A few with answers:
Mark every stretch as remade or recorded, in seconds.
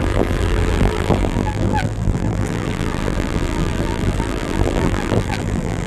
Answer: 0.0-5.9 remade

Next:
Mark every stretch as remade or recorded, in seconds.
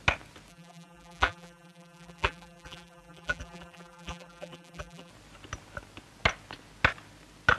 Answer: 0.0-0.5 recorded; 0.5-5.1 remade; 5.1-7.6 recorded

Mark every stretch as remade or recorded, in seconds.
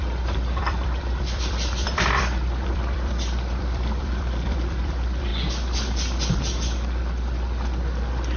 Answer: 0.0-5.3 remade; 5.3-8.4 recorded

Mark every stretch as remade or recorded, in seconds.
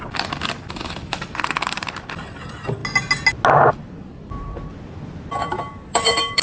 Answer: 0.0-2.8 remade; 2.8-3.7 recorded; 3.7-4.7 remade; 4.7-5.3 recorded; 5.3-6.4 remade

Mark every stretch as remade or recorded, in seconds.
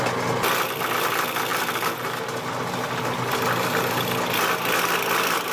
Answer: 0.0-5.5 recorded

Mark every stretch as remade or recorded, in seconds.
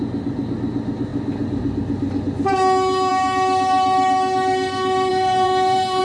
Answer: 0.0-5.1 recorded; 5.1-6.0 remade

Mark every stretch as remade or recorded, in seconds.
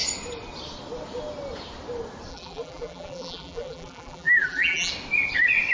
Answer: 0.0-2.3 recorded; 2.3-4.9 remade; 4.9-5.7 recorded